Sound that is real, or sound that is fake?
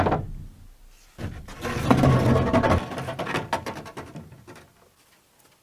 real